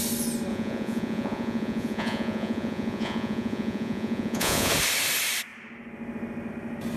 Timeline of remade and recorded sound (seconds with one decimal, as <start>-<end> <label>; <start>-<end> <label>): 0.0-0.5 recorded; 0.5-4.7 remade; 4.7-7.0 recorded